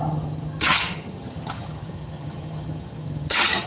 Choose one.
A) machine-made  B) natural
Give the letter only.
A